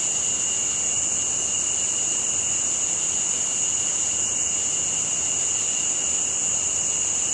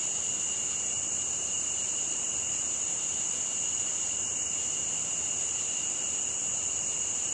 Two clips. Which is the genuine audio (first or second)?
first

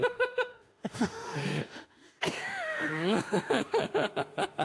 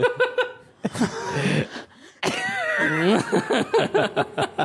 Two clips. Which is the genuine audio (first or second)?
second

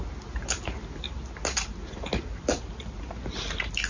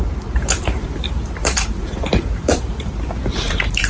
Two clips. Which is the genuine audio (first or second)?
first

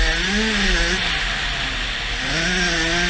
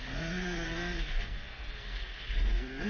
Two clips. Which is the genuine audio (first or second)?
first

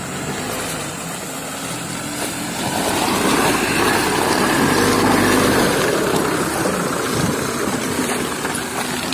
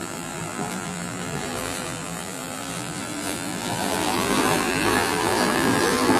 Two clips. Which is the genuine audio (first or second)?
first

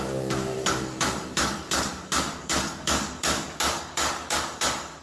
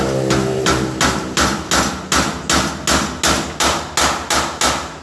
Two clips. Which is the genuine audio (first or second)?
second